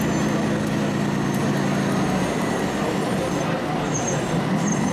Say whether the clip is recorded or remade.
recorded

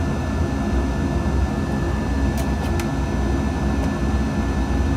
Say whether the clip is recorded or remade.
recorded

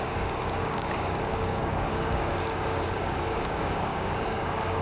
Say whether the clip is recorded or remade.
remade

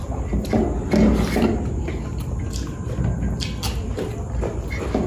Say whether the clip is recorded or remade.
recorded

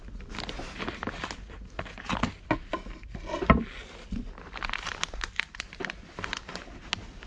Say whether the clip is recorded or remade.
recorded